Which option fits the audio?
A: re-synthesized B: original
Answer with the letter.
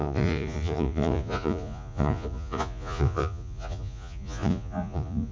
A